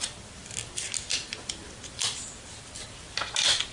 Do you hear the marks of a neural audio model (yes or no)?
no